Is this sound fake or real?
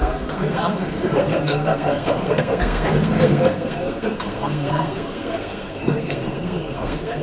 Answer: fake